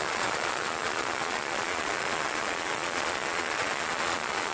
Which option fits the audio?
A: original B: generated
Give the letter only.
B